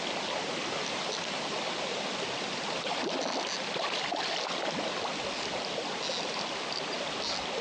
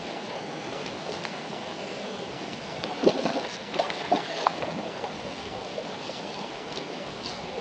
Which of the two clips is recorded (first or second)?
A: first